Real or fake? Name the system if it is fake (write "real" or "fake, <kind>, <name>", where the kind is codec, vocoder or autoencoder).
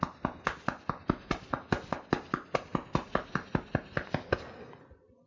real